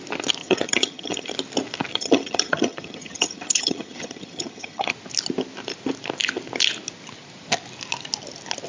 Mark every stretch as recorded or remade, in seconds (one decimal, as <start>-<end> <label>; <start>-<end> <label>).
0.0-0.4 recorded; 0.4-1.3 remade; 1.3-1.9 recorded; 1.9-4.9 remade; 4.9-8.7 recorded